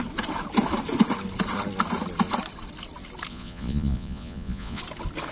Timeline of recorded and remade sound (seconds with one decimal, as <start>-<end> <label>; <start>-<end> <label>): 0.0-3.3 recorded; 3.3-4.8 remade; 4.8-5.3 recorded